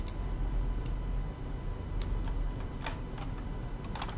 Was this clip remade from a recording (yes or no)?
no